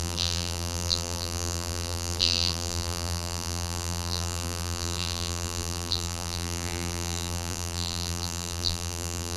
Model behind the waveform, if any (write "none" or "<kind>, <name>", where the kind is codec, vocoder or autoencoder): vocoder, BigVGAN v2